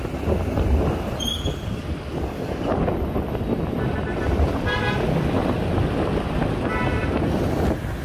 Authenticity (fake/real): real